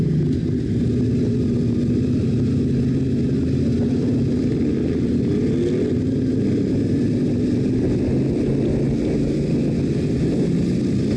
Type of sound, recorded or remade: recorded